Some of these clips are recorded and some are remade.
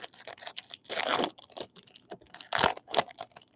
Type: recorded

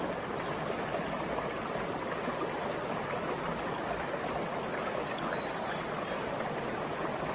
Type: recorded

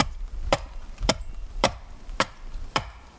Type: remade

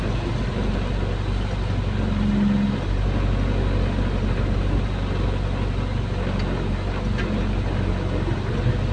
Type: recorded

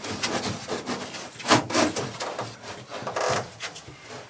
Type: remade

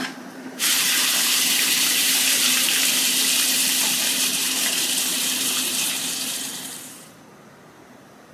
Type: remade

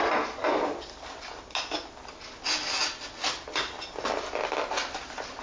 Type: recorded